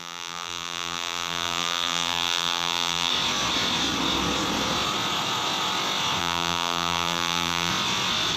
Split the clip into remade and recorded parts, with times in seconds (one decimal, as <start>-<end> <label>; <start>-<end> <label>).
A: 0.0-3.1 remade; 3.1-6.2 recorded; 6.2-7.7 remade; 7.7-8.4 recorded